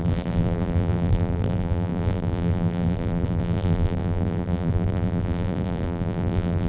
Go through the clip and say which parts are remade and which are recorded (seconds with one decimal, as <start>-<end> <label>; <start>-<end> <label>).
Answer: 0.0-6.7 remade